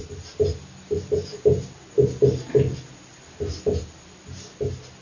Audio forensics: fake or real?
real